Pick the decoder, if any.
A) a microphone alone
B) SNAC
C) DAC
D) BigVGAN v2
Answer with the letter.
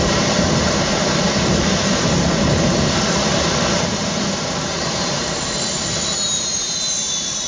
D